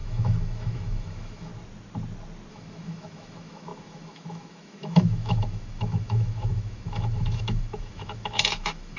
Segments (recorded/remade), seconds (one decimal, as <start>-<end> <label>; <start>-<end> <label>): 0.0-1.5 remade; 1.5-2.5 recorded; 2.5-9.0 remade